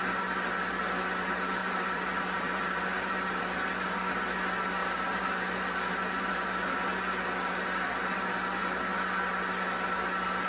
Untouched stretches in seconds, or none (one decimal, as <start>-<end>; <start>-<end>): 0.0-1.6; 3.4-10.5